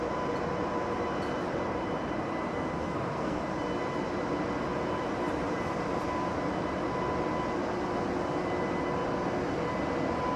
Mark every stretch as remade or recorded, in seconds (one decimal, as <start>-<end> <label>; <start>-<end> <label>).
0.0-2.8 recorded; 2.8-3.4 remade; 3.4-10.4 recorded

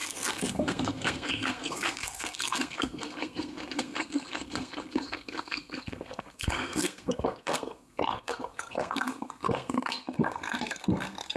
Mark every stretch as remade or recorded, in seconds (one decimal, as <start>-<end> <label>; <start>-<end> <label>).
0.0-11.4 remade

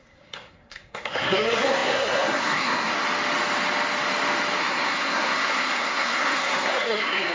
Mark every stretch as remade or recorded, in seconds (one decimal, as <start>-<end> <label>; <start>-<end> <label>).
0.0-2.9 remade; 2.9-4.6 recorded; 4.6-7.3 remade

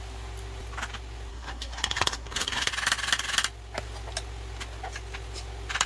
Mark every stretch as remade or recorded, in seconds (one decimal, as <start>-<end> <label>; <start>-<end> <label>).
0.0-1.3 recorded; 1.3-2.7 remade; 2.7-5.9 recorded

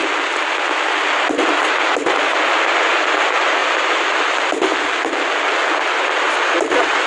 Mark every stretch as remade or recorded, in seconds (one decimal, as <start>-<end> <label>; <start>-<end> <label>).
0.0-7.1 recorded

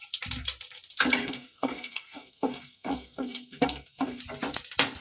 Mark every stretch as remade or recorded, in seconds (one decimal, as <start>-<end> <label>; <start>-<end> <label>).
0.0-1.2 recorded; 1.2-4.2 remade; 4.2-5.0 recorded

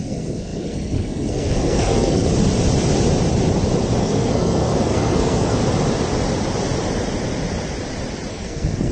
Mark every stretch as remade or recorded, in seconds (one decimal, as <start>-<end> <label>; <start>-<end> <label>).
0.0-2.3 remade; 2.3-4.0 recorded; 4.0-5.6 remade; 5.6-8.3 recorded; 8.3-8.9 remade